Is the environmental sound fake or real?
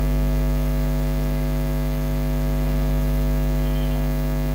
fake